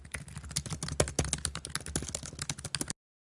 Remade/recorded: recorded